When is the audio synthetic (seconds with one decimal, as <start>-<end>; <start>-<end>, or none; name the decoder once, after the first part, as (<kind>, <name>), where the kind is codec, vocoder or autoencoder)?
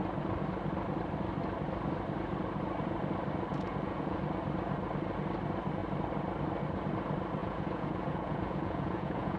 3.5-4.2 (vocoder, Vocos); 7.4-9.4